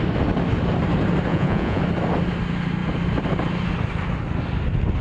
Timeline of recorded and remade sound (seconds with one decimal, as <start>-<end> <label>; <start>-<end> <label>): 0.0-1.3 recorded; 1.3-1.8 remade; 1.8-5.0 recorded